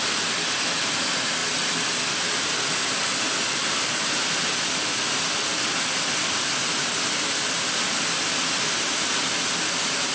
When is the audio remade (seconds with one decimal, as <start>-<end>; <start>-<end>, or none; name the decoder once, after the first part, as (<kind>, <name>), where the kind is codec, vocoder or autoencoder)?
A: none